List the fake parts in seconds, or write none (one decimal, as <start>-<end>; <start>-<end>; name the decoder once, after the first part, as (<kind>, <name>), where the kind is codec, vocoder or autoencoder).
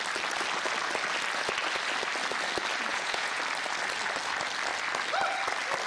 2.9-3.4 (vocoder, Vocos)